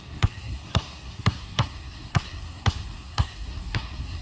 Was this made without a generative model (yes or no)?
no